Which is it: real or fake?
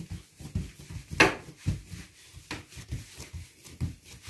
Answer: real